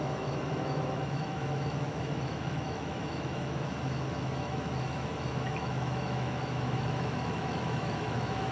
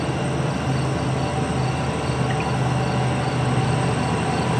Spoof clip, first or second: first